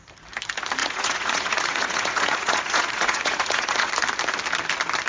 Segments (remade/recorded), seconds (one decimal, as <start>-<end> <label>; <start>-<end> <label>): 0.0-0.8 recorded; 0.8-3.9 remade; 3.9-5.1 recorded